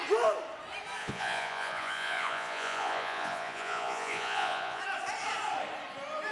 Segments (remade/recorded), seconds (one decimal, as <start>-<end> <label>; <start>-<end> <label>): 0.0-1.0 recorded; 1.0-4.8 remade; 4.8-6.3 recorded